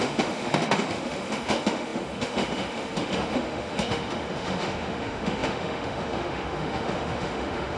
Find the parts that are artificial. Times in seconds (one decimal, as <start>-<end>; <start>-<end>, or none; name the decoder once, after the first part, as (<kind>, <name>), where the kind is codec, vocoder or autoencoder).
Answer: 0.0-7.8 (autoencoder, DAC-VAE)